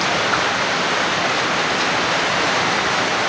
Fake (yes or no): no